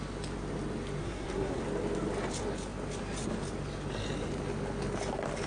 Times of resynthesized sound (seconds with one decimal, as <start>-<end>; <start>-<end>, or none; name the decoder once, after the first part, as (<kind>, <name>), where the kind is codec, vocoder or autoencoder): 1.0-1.6 (codec, SNAC)